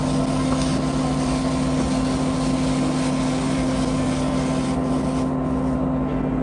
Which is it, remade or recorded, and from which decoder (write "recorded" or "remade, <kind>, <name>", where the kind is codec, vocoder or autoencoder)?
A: recorded